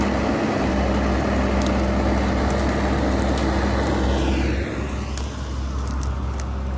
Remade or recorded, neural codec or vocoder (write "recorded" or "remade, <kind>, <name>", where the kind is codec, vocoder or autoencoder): recorded